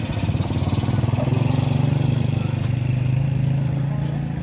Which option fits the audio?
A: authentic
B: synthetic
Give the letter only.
A